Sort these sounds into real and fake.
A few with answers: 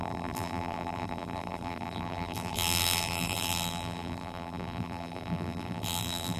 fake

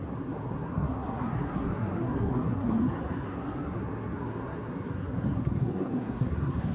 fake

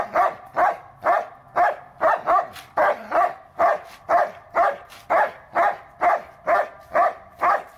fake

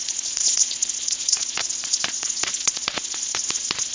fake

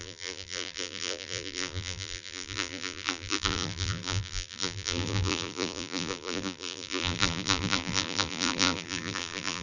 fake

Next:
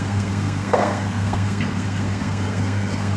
fake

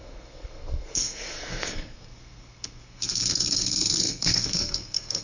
fake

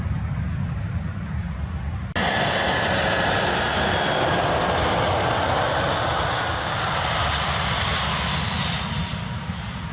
real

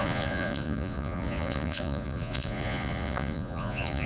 fake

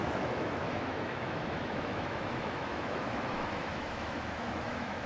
fake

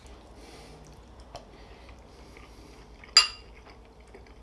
real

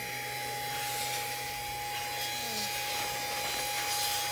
real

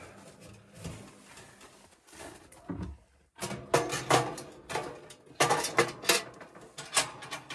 real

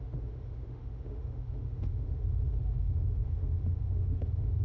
fake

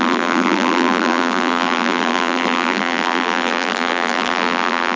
fake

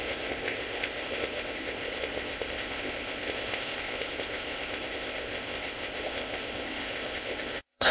fake